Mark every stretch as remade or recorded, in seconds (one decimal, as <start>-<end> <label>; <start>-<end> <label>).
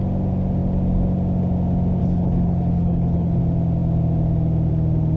0.0-2.0 recorded; 2.0-3.4 remade; 3.4-5.2 recorded